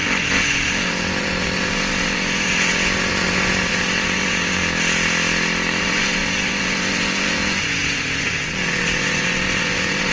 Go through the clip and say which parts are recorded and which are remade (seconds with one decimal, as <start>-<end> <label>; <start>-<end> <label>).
0.0-4.6 remade; 4.6-5.8 recorded; 5.8-10.1 remade